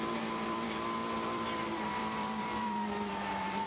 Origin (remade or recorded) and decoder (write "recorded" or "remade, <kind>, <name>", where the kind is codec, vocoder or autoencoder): remade, vocoder, BigVGAN v2